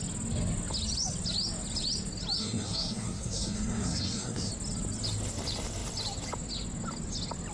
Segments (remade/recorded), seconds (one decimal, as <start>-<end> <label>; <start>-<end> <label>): 0.0-2.4 recorded; 2.4-4.5 remade; 4.5-7.5 recorded